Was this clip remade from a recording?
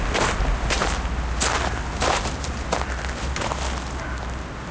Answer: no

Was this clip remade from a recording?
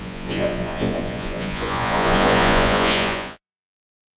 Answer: yes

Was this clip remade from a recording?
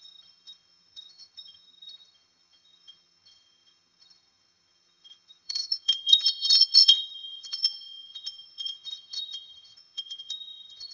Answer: yes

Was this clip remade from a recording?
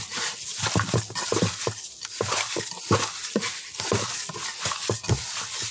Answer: no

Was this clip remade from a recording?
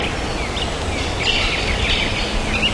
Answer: no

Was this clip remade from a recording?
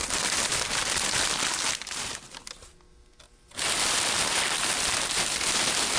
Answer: no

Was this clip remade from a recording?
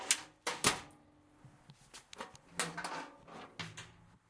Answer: no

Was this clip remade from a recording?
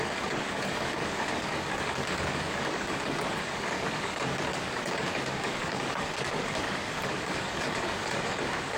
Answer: yes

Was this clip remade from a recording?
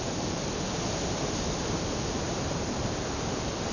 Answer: yes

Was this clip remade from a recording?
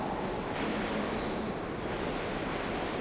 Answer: no